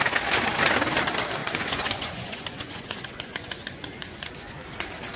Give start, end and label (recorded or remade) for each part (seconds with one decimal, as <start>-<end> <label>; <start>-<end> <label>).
0.0-1.4 recorded; 1.4-4.5 remade; 4.5-5.2 recorded